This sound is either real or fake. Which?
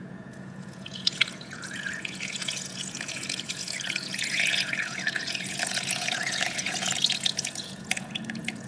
fake